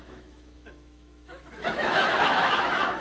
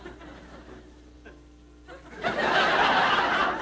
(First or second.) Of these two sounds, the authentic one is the second